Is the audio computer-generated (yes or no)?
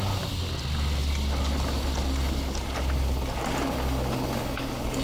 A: no